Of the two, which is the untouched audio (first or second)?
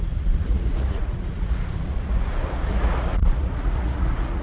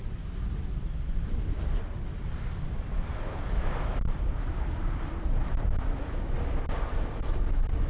second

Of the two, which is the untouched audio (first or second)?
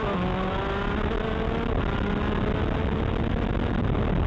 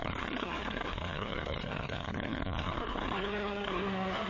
first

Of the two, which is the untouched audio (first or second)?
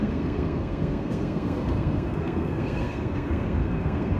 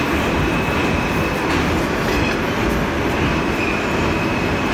second